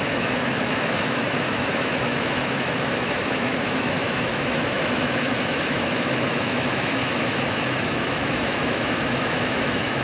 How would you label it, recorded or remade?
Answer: remade